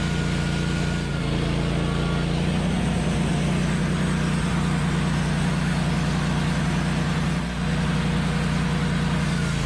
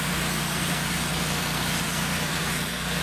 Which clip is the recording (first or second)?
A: first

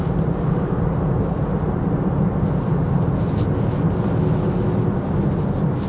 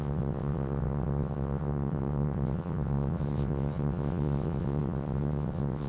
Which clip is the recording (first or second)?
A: first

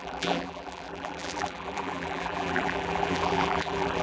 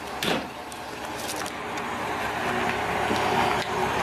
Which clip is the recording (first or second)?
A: second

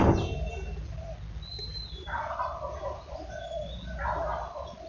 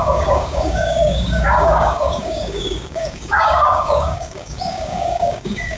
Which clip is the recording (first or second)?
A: first